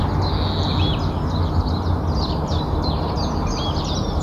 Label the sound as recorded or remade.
recorded